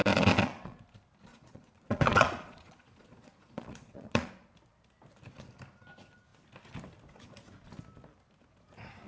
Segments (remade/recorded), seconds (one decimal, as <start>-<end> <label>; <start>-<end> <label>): 0.0-0.8 remade; 0.8-1.3 recorded; 1.3-4.3 remade; 4.3-9.1 recorded